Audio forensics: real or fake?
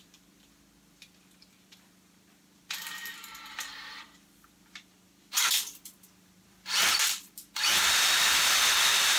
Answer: fake